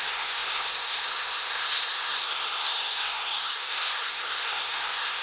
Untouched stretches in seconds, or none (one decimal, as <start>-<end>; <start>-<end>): none